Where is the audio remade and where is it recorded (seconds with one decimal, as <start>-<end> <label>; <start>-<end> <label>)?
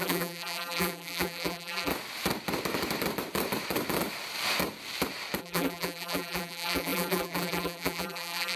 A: 0.0-1.9 remade; 1.9-5.4 recorded; 5.4-8.6 remade